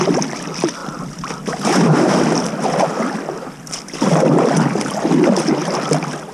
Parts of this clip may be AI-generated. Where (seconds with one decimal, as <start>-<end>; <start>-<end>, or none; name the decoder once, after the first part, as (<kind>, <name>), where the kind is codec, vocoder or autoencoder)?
none